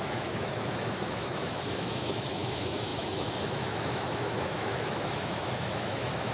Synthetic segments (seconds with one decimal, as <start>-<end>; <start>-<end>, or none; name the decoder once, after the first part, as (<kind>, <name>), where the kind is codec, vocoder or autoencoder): 0.0-6.3 (autoencoder, DAC-VAE)